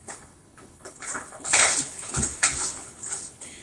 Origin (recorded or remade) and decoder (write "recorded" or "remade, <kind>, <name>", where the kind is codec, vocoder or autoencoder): remade, codec, HILCodec